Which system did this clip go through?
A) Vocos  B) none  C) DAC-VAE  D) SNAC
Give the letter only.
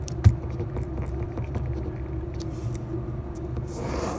B